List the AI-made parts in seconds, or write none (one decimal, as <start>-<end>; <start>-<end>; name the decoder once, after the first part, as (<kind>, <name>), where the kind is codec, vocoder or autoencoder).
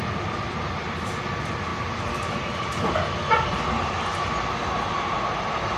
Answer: none